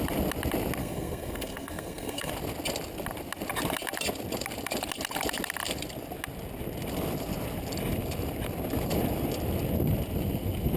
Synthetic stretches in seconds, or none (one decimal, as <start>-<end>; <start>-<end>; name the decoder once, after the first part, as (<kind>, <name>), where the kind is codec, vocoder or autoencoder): 0.8-2.3 (codec, SNAC)